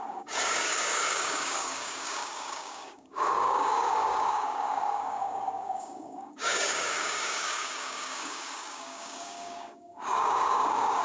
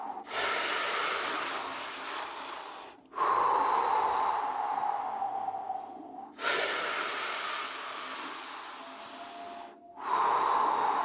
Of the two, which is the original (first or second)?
second